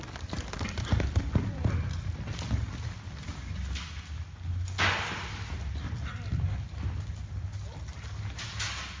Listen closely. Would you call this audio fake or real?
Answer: real